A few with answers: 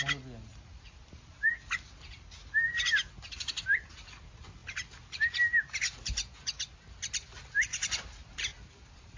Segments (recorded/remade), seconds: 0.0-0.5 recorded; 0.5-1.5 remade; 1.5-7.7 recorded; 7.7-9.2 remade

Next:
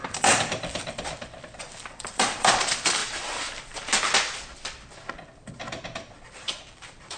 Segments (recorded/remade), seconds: 0.0-3.0 remade; 3.0-5.1 recorded; 5.1-7.2 remade

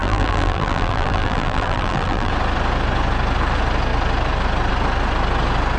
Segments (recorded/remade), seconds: 0.0-2.3 remade; 2.3-5.8 recorded

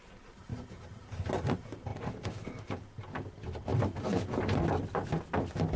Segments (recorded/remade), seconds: 0.0-0.5 recorded; 0.5-1.1 remade; 1.1-1.9 recorded; 1.9-2.8 remade; 2.8-5.8 recorded

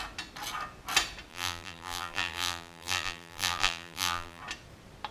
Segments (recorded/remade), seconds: 0.0-1.3 recorded; 1.3-4.4 remade; 4.4-5.1 recorded

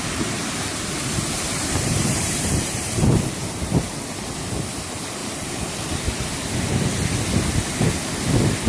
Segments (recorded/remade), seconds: 0.0-0.4 recorded; 0.4-4.1 remade; 4.1-5.2 recorded; 5.2-5.9 remade; 5.9-8.7 recorded